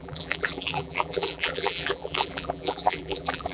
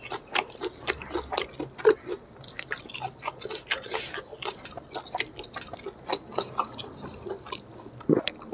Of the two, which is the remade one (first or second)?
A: first